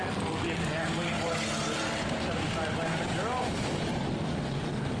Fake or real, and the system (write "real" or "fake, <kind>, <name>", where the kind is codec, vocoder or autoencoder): real